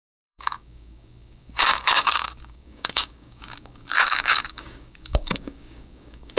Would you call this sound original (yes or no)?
no